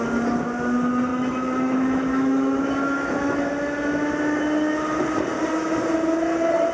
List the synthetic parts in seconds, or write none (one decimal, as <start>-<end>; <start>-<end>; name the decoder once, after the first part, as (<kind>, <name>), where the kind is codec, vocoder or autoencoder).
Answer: 1.1-3.4 (autoencoder, DAC-VAE)